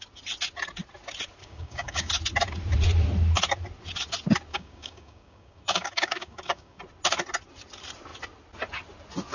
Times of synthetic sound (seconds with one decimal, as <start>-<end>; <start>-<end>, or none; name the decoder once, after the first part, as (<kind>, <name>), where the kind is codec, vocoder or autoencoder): 1.4-2.1 (codec, DAC); 4.5-6.8

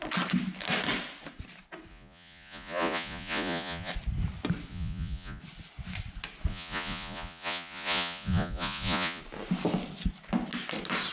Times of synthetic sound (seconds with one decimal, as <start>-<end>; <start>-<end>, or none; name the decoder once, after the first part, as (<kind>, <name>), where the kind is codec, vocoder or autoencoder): 1.9-3.9 (vocoder, Vocos); 4.7-5.4; 6.5-9.2

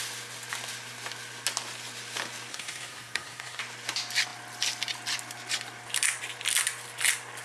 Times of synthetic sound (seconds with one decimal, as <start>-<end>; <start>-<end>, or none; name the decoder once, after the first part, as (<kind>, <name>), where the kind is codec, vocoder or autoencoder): 2.5-3.6 (codec, SNAC)

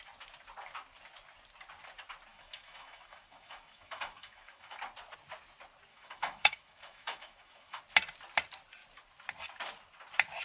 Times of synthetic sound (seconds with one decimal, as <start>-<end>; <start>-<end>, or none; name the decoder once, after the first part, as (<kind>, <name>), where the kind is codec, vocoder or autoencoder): 2.3-4.8 (autoencoder, DAC-VAE); 5.9-7.8